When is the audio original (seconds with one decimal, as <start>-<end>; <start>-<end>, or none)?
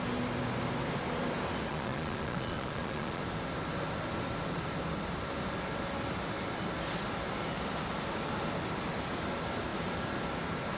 0.0-1.7; 3.2-10.8